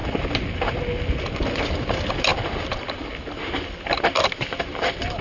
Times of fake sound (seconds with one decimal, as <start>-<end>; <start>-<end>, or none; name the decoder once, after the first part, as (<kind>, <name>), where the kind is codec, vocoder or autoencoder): none